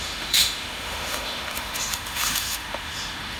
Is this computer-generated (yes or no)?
yes